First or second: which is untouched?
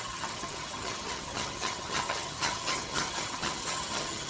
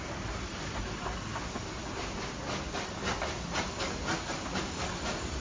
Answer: second